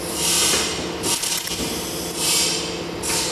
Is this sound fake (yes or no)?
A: no